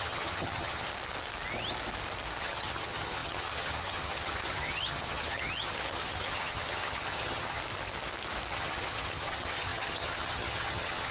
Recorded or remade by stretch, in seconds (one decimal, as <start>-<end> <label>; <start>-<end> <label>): 0.0-0.9 remade; 0.9-2.4 recorded; 2.4-7.6 remade; 7.6-8.5 recorded; 8.5-11.1 remade